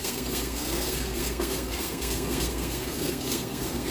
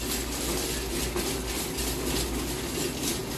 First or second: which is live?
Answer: second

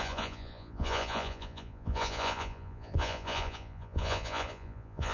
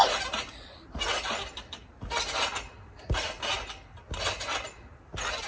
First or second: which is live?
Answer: second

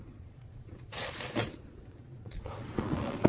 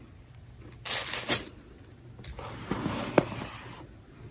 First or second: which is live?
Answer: second